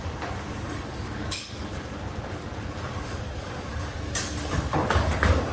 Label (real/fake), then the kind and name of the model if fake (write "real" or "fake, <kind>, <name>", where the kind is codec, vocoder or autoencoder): fake, codec, DAC